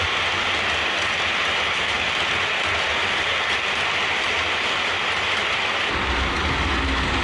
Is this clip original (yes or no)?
yes